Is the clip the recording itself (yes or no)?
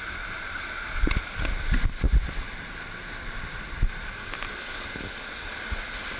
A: yes